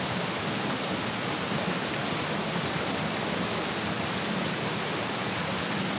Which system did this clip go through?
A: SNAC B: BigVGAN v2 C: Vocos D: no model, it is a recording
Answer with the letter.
D